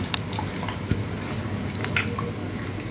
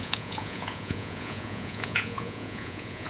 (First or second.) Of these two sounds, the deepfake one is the second